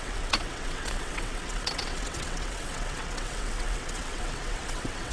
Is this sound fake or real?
fake